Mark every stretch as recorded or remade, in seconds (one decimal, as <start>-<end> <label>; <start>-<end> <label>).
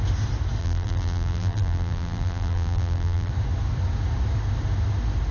0.0-0.6 recorded; 0.6-3.3 remade; 3.3-5.3 recorded